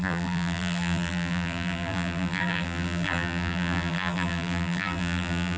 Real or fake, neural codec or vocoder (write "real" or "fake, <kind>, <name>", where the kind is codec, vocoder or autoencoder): fake, vocoder, BigVGAN v2